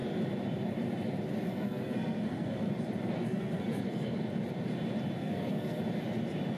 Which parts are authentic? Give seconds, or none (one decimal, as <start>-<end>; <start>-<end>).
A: 0.0-1.5; 2.7-3.2; 4.2-5.2; 5.8-6.6